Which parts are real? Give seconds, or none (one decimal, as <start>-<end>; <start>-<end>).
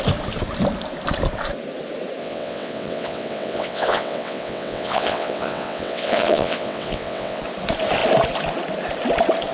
0.0-2.2; 7.4-9.5